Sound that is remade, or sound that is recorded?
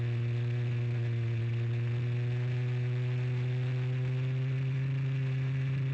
recorded